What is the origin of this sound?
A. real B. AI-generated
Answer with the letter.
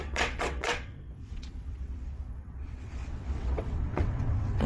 B